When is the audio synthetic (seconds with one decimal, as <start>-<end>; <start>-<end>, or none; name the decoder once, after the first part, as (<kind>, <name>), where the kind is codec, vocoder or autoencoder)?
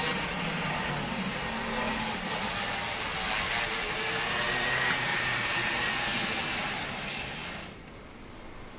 5.1-5.9 (vocoder, BigVGAN v2)